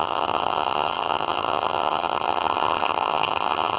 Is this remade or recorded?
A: remade